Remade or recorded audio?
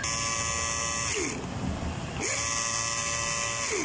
recorded